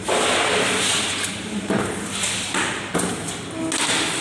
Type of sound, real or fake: real